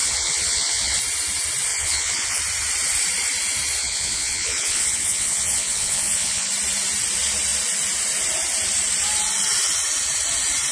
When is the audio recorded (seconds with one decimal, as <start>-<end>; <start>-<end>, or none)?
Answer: 1.0-1.7; 2.4-3.8; 6.5-10.7

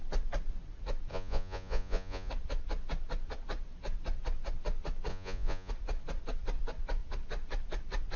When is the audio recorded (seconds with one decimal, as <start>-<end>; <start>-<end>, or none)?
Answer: 0.0-1.1; 2.3-5.1; 5.7-8.2

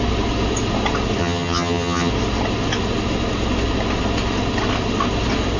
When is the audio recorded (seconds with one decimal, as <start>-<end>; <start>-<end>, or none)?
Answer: 0.0-1.2; 2.1-5.6

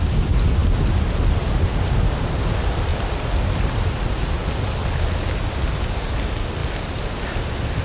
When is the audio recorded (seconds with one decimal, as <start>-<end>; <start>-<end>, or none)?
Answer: 0.0-0.6; 2.4-2.9; 4.2-7.8

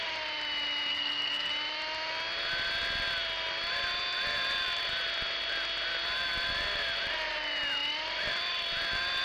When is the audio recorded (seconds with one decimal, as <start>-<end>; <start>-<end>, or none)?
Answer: 0.0-0.9; 1.5-9.2